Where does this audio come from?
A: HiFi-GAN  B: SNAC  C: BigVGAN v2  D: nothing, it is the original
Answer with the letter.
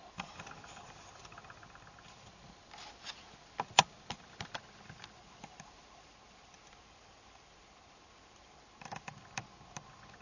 D